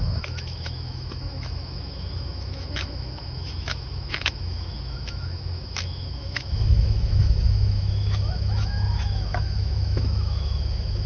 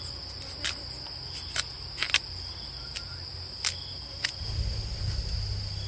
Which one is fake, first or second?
first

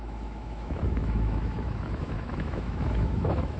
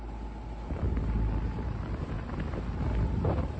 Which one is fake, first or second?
first